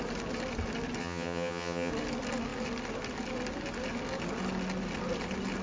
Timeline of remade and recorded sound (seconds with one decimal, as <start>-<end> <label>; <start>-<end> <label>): 0.0-1.0 recorded; 1.0-1.9 remade; 1.9-5.6 recorded